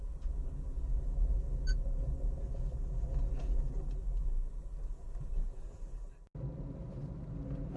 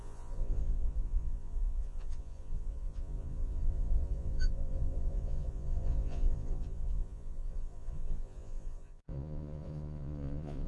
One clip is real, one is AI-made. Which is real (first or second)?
first